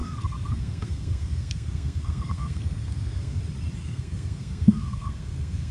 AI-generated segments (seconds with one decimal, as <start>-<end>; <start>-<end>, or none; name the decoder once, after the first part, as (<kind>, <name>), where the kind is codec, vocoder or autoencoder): 0.0-3.4 (codec, SNAC); 3.8-5.7